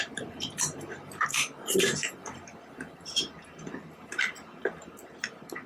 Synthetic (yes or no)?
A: yes